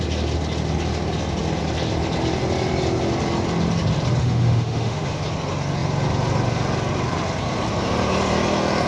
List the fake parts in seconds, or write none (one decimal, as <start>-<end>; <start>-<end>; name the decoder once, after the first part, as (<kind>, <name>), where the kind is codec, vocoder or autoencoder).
4.2-5.2 (autoencoder, DAC-VAE)

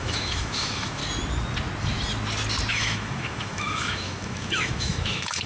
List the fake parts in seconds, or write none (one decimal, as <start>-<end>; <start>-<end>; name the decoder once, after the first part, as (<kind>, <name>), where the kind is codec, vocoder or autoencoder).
0.0-1.0 (autoencoder, DAC-VAE); 2.7-5.5

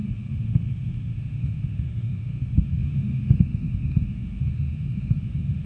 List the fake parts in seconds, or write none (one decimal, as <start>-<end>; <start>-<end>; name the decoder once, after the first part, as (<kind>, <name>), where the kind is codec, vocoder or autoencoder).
0.0-5.7 (autoencoder, DAC-VAE)